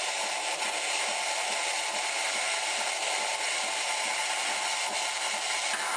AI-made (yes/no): no